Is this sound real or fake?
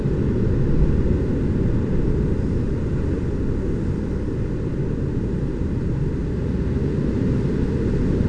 real